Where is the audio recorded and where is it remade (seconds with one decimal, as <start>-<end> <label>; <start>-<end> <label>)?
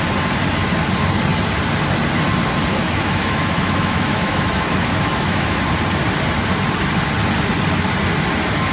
0.0-2.7 recorded; 2.7-5.6 remade; 5.6-8.7 recorded